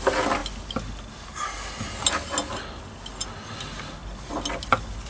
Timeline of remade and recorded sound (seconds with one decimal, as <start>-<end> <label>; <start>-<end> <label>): 0.0-5.1 recorded

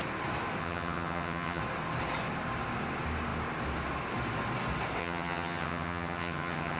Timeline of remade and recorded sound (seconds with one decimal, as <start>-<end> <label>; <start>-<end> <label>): 0.0-0.6 recorded; 0.6-1.6 remade; 1.6-5.0 recorded; 5.0-6.8 remade

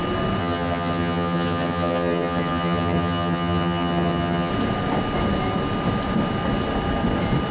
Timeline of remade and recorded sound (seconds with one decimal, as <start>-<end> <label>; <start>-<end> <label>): 0.0-0.4 recorded; 0.4-4.5 remade; 4.5-7.5 recorded

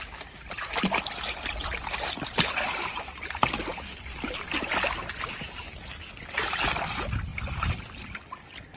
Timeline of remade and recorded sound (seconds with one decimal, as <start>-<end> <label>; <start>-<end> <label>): 0.0-8.8 recorded

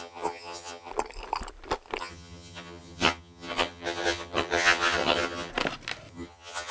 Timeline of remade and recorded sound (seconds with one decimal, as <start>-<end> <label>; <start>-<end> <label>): 0.0-0.9 remade; 0.9-2.0 recorded; 2.0-5.5 remade; 5.5-6.1 recorded; 6.1-6.7 remade

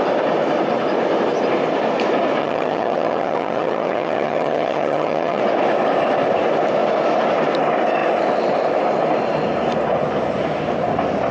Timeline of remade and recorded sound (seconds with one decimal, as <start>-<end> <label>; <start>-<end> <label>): 0.0-2.4 recorded; 2.4-5.4 remade; 5.4-11.3 recorded

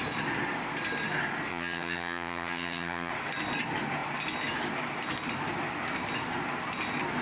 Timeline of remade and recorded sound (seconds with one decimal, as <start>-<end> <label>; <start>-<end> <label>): 0.0-1.5 recorded; 1.5-3.1 remade; 3.1-7.2 recorded